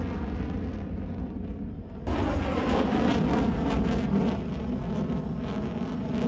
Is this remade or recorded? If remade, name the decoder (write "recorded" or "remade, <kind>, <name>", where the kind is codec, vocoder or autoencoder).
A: recorded